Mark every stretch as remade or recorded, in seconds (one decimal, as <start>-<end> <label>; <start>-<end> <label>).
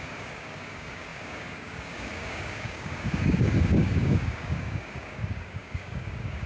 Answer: 0.0-6.5 remade